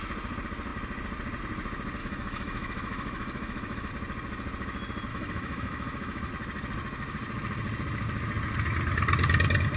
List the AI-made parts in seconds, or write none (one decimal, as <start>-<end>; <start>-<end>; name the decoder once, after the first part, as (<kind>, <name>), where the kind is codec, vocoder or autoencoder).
2.0-3.9 (autoencoder, DAC-VAE); 5.1-6.3